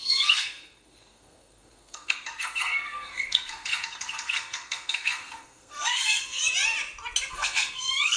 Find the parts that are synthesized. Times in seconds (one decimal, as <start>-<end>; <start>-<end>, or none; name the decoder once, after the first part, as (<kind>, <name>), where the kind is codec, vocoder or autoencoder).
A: 0.0-6.4 (codec, SNAC); 7.3-8.2